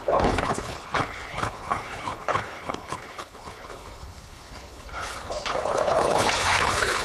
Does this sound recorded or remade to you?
remade